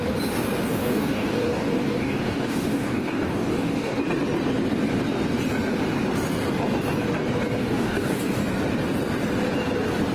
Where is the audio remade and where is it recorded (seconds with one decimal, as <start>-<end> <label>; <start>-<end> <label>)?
0.0-0.7 recorded; 0.7-4.0 remade; 4.0-7.6 recorded; 7.6-8.4 remade; 8.4-10.1 recorded